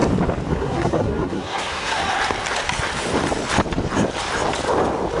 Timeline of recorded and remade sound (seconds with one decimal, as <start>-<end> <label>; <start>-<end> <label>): 0.0-0.5 recorded; 0.5-2.0 remade; 2.0-5.2 recorded